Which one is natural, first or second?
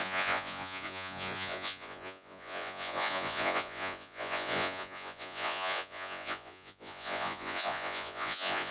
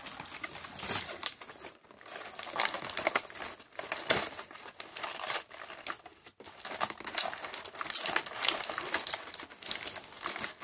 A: second